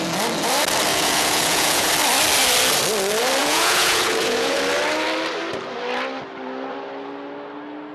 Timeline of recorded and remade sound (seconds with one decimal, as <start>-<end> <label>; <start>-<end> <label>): 0.0-0.9 recorded; 0.9-1.9 remade; 1.9-3.4 recorded; 3.4-4.6 remade; 4.6-7.9 recorded